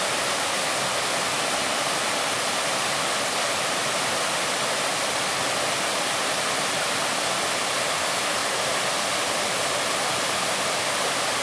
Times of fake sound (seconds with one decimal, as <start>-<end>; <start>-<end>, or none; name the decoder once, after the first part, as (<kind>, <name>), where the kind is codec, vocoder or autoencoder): none